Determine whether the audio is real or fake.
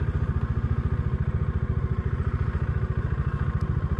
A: real